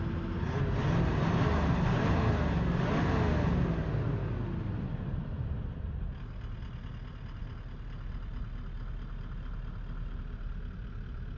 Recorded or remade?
recorded